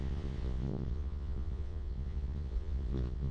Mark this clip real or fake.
fake